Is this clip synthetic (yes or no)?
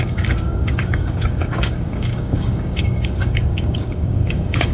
yes